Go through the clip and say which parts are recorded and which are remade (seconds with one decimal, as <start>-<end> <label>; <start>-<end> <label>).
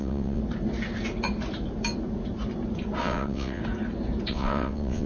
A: 0.0-0.4 remade; 0.4-3.0 recorded; 3.0-3.6 remade; 3.6-4.3 recorded; 4.3-5.1 remade